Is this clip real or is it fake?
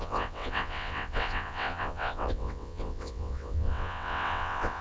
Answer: fake